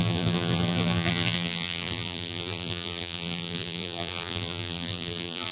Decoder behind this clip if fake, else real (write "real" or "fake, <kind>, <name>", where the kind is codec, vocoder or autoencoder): fake, vocoder, BigVGAN v2